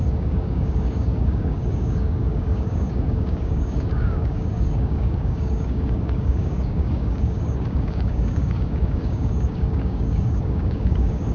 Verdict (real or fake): fake